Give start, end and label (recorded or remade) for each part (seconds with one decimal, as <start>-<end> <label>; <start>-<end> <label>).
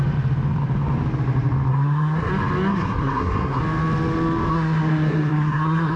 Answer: 0.0-1.7 recorded; 1.7-2.3 remade; 2.3-2.7 recorded; 2.7-3.6 remade; 3.6-4.5 recorded; 4.5-6.0 remade